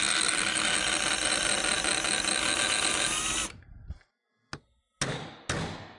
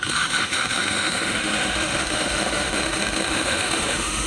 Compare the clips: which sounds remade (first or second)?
second